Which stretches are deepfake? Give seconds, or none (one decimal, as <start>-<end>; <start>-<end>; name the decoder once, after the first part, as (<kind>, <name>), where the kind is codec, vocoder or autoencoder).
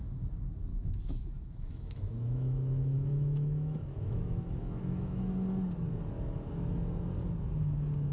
0.7-5.2 (autoencoder, DAC-VAE)